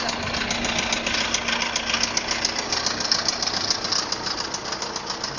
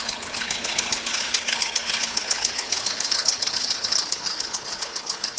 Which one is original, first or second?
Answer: first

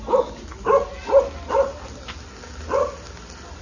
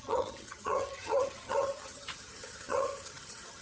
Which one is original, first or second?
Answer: first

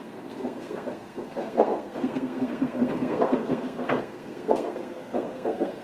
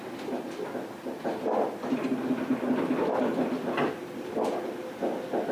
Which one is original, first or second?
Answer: second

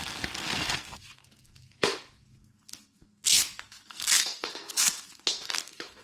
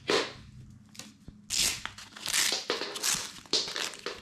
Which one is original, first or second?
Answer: second